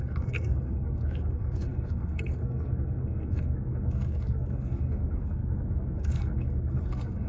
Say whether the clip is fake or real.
fake